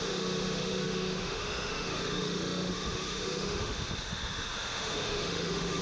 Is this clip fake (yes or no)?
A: yes